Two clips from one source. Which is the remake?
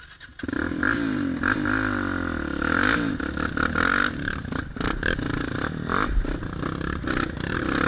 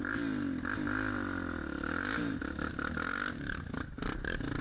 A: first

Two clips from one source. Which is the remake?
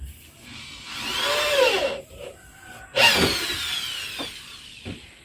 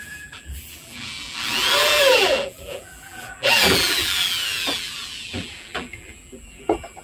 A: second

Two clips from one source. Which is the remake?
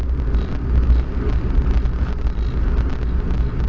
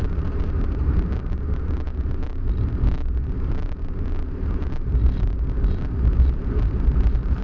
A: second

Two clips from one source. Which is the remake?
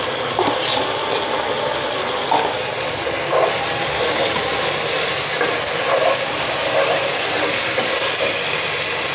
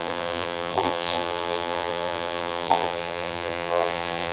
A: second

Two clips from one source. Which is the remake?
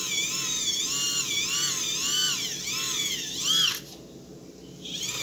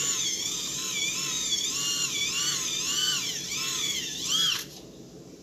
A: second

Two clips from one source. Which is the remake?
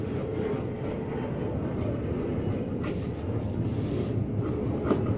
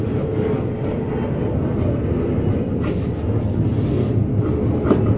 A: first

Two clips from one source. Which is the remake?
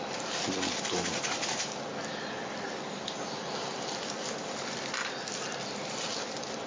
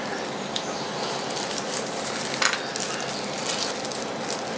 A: first